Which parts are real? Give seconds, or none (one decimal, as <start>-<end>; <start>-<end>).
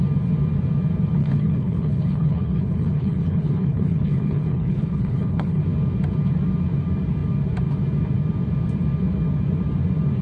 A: 0.0-1.2; 5.6-10.2